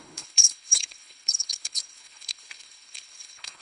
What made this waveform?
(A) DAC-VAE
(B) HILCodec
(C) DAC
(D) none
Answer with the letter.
B